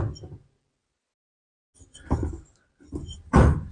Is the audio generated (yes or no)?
no